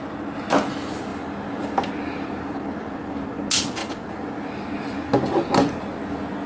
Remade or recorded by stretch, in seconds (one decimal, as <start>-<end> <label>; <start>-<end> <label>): 0.0-6.5 recorded